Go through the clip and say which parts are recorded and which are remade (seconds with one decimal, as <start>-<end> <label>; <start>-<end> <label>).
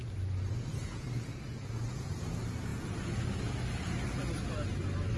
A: 0.0-0.7 recorded; 0.7-2.1 remade; 2.1-5.2 recorded